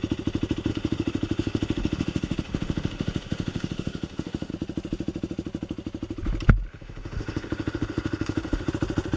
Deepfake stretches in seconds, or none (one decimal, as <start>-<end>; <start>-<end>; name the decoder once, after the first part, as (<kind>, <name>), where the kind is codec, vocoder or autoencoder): 0.7-4.5 (autoencoder, DAC-VAE); 6.7-8.7